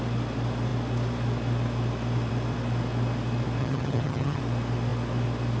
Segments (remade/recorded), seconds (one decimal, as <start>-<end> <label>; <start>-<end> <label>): 0.0-3.6 recorded; 3.6-4.4 remade; 4.4-5.6 recorded